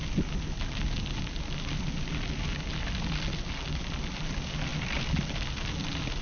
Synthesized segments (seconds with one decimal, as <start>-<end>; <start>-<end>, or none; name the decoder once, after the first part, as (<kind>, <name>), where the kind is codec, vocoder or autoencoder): none